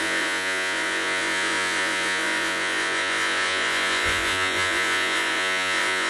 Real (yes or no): no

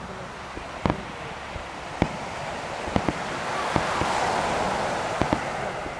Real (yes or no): yes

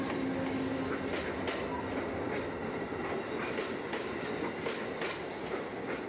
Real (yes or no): yes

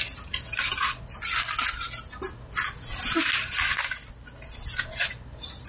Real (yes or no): yes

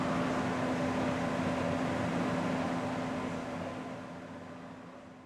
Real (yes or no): yes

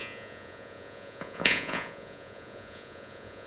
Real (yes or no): no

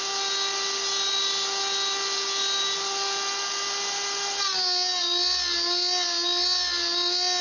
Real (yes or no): yes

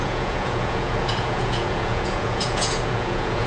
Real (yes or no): no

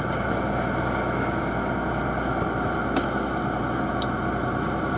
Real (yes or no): yes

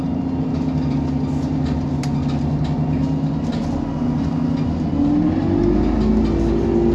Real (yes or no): yes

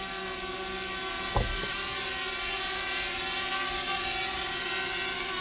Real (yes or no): yes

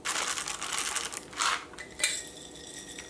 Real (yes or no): yes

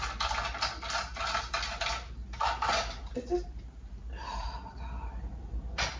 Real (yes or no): yes